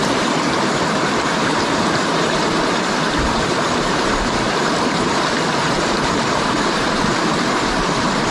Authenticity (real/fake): fake